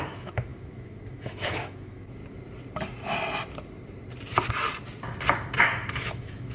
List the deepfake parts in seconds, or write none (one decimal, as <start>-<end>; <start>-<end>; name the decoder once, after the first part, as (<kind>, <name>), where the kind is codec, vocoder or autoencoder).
0.0-2.2 (autoencoder, DAC-VAE); 5.6-6.5